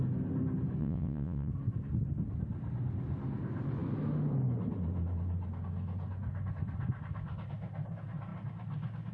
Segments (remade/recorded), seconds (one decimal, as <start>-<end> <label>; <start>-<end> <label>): 0.0-0.8 recorded; 0.8-1.5 remade; 1.5-9.1 recorded

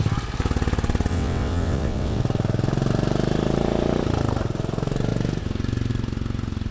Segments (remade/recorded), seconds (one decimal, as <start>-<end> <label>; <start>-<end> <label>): 0.0-1.1 recorded; 1.1-2.2 remade; 2.2-6.7 recorded

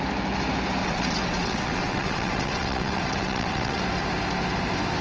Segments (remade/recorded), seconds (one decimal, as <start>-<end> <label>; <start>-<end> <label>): 0.0-0.8 recorded; 0.8-3.8 remade; 3.8-5.0 recorded

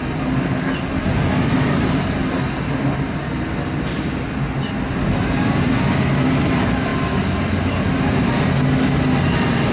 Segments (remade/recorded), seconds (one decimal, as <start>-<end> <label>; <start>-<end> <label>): 0.0-9.7 recorded